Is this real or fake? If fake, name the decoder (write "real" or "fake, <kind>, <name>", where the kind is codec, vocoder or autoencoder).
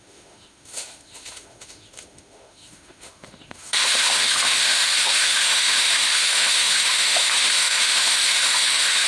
fake, autoencoder, DAC-VAE